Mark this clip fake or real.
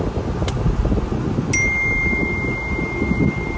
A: real